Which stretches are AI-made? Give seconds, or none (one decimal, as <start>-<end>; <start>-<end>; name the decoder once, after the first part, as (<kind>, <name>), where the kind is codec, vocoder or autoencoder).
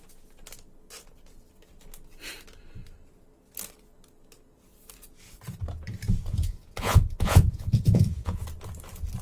6.3-8.4 (vocoder, Vocos)